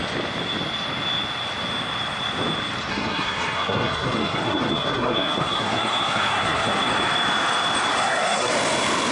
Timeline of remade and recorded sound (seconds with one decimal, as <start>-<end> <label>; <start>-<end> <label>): 0.0-2.9 recorded; 2.9-6.9 remade; 6.9-7.9 recorded; 7.9-8.5 remade; 8.5-9.1 recorded